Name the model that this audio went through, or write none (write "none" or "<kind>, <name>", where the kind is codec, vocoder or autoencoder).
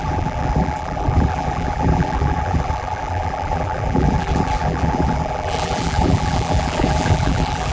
vocoder, BigVGAN v2